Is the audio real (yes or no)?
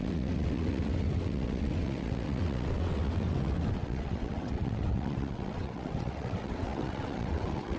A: no